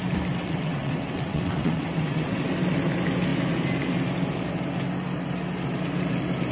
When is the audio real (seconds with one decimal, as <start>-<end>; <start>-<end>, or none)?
0.0-0.4; 2.5-6.5